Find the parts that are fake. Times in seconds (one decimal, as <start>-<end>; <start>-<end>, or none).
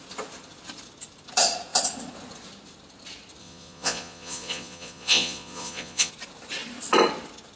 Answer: 3.4-6.1